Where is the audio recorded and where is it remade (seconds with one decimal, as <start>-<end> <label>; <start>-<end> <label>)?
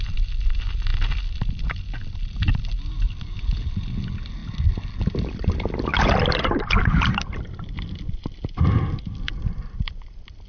0.0-5.9 recorded; 5.9-10.5 remade